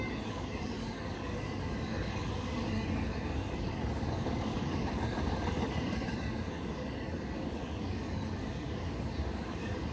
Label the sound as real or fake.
fake